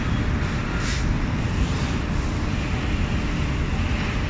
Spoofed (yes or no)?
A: no